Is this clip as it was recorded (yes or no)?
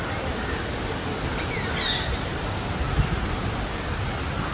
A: yes